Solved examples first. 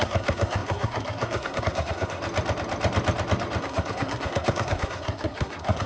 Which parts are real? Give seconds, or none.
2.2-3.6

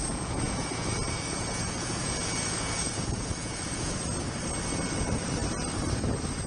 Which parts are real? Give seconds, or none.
3.9-6.5

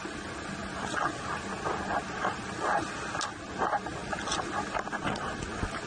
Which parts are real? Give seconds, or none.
0.0-5.9

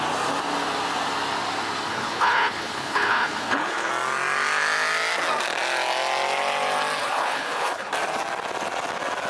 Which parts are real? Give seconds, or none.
0.0-1.9; 3.9-7.0; 7.9-9.3

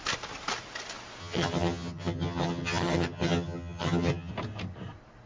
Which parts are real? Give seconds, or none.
0.0-1.2; 4.3-5.3

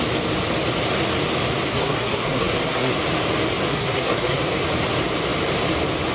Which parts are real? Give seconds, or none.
0.0-1.7; 2.9-3.7; 4.4-6.1

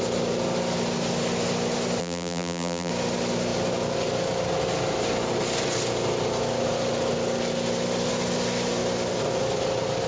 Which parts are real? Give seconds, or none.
0.0-2.0; 2.9-10.1

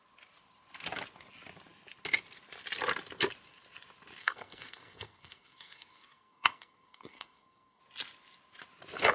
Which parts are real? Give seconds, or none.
0.0-4.2; 7.8-9.1